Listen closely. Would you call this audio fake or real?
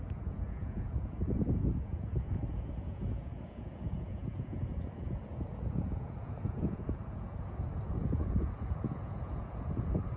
fake